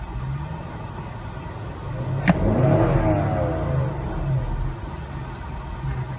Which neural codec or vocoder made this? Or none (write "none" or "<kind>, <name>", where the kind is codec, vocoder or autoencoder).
none